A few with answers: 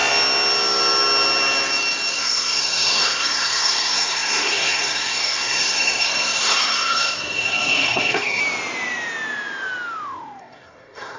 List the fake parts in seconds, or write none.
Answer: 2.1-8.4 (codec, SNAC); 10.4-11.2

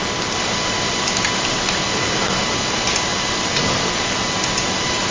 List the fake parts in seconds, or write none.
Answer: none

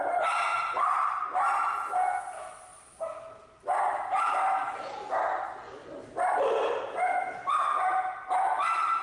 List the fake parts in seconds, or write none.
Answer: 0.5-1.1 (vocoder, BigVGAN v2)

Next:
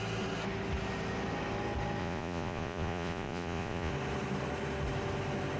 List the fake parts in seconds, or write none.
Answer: 2.0-3.9 (vocoder, Vocos)

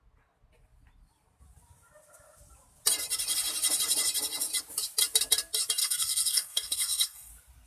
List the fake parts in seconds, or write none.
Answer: 5.8-7.3 (codec, SNAC)

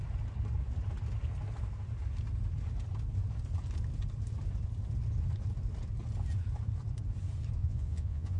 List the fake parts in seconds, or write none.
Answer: 7.6-8.4 (vocoder, Vocos)

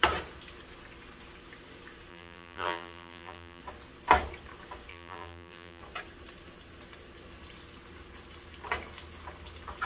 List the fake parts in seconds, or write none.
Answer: 2.1-3.6 (vocoder, BigVGAN v2); 4.9-5.8

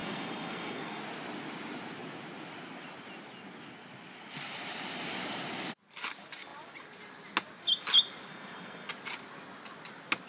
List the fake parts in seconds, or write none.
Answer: 0.0-1.0 (codec, SNAC); 8.3-8.9